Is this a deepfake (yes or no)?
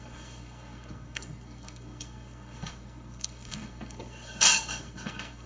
yes